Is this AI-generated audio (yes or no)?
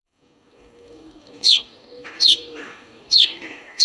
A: yes